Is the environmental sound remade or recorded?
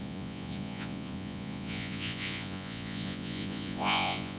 remade